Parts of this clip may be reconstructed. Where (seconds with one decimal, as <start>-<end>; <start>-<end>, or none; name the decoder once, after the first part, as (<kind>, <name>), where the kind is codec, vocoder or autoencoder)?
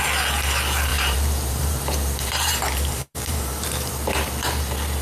0.9-3.9 (vocoder, BigVGAN v2)